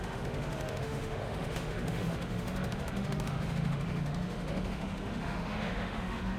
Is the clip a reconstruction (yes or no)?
yes